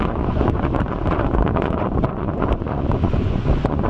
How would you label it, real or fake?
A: fake